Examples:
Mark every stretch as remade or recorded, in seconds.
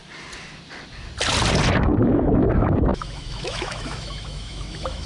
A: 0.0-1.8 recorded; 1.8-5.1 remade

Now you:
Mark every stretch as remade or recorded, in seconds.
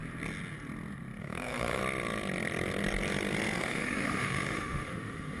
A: 0.0-1.2 recorded; 1.2-1.8 remade; 1.8-3.6 recorded; 3.6-5.4 remade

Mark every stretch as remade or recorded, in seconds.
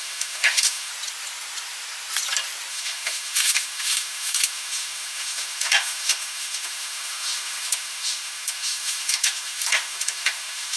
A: 0.0-0.9 remade; 0.9-2.7 recorded; 2.7-10.8 remade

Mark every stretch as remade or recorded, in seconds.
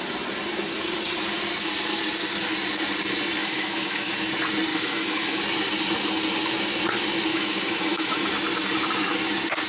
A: 0.0-3.4 recorded; 3.4-4.1 remade; 4.1-4.7 recorded; 4.7-5.4 remade; 5.4-7.3 recorded; 7.3-8.3 remade; 8.3-9.7 recorded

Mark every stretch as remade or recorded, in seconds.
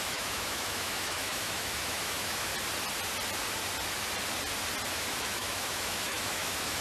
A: 0.0-2.5 remade; 2.5-4.9 recorded; 4.9-6.8 remade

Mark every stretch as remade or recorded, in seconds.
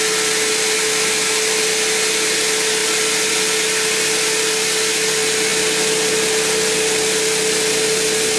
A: 0.0-8.4 recorded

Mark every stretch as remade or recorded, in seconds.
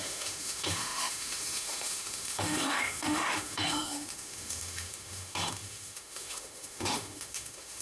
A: 0.0-7.8 remade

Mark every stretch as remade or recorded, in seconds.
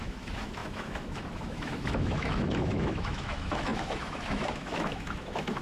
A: 0.0-5.6 remade